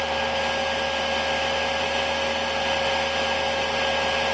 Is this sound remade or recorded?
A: recorded